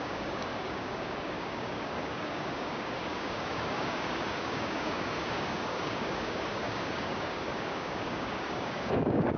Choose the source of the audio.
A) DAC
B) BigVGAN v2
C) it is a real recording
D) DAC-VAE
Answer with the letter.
A